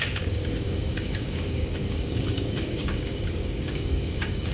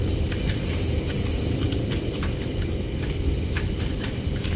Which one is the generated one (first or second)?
first